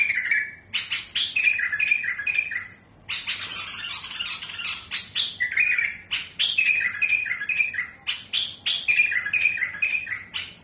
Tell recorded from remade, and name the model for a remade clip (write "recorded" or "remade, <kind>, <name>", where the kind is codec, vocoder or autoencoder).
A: recorded